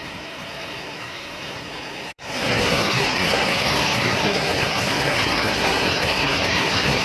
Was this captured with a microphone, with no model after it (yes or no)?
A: no